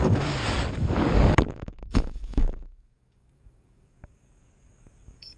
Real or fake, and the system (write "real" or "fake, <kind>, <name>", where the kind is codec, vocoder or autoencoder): fake, codec, DAC